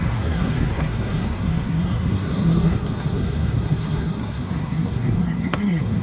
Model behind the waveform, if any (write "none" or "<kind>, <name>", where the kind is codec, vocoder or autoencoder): codec, SNAC